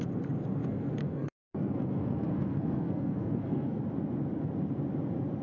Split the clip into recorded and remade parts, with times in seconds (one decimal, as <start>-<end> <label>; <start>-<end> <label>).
0.0-0.6 recorded; 0.6-3.8 remade; 3.8-5.4 recorded